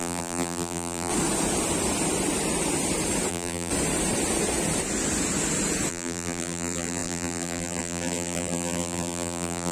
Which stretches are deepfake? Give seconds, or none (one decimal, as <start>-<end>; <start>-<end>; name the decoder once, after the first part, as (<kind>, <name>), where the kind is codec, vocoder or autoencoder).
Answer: 0.0-1.1 (vocoder, BigVGAN v2); 3.3-3.7; 5.9-9.7